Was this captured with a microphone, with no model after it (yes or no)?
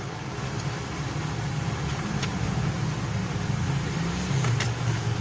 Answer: yes